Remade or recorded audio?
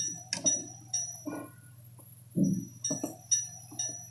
recorded